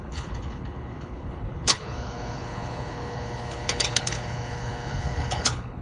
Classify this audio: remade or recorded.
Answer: remade